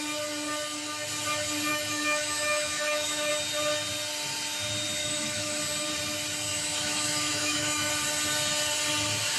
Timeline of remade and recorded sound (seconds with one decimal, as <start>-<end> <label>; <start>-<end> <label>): 0.0-1.7 recorded; 1.7-3.3 remade; 3.3-5.0 recorded; 5.0-5.6 remade; 5.6-6.5 recorded; 6.5-7.9 remade; 7.9-9.4 recorded